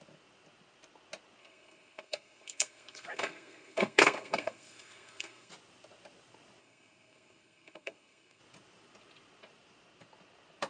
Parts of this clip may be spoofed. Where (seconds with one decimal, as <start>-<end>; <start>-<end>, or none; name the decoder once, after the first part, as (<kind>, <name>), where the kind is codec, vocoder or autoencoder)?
1.4-5.5 (codec, SNAC); 6.6-8.4